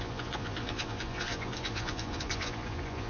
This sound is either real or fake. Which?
fake